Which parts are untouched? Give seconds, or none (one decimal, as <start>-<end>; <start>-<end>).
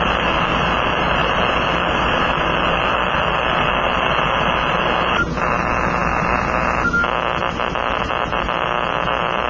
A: 0.0-9.5